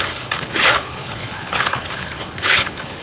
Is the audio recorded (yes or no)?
no